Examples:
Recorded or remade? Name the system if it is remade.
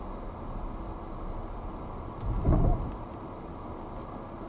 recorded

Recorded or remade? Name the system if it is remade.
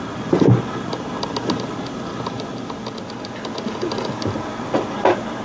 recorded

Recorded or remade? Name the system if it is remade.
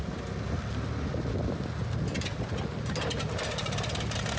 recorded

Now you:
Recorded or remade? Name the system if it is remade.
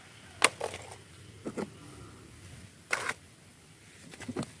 recorded